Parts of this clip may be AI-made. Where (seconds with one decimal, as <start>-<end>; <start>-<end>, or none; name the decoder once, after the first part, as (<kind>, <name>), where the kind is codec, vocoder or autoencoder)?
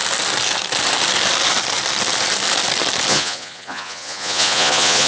3.1-5.1 (vocoder, Vocos)